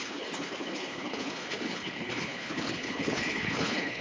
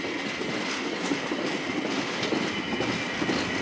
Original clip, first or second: second